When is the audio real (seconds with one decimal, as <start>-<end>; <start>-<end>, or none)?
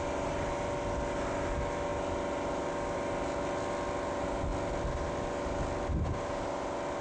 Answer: 0.0-1.9; 3.4-7.0